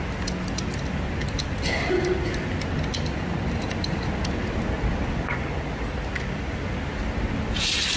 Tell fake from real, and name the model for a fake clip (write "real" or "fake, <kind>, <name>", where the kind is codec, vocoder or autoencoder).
real